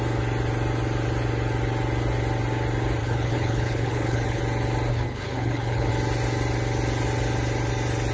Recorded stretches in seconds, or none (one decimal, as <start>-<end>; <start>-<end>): 0.0-3.0; 4.4-4.9; 5.9-8.1